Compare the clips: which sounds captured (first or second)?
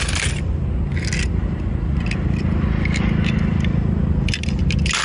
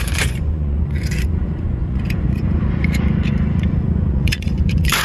first